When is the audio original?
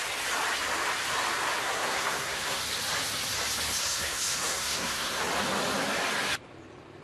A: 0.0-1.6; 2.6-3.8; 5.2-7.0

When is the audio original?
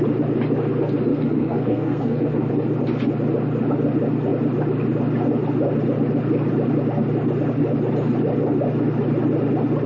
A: 0.0-1.1; 2.5-9.9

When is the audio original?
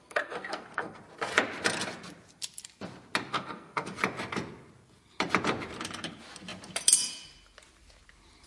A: 1.0-3.3; 4.0-8.5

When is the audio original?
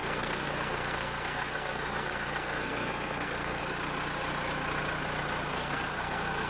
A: 3.6-5.5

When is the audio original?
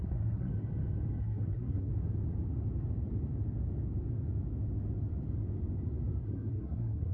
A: 0.5-1.2; 1.9-6.2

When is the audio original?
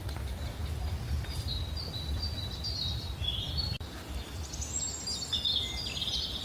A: 0.0-6.4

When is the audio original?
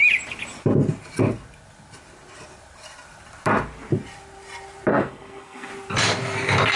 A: 0.0-4.9; 5.7-6.8